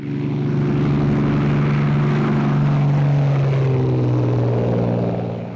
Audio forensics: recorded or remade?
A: recorded